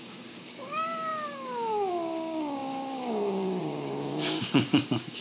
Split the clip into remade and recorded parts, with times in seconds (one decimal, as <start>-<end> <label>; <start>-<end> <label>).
0.0-5.2 remade